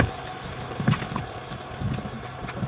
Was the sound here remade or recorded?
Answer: recorded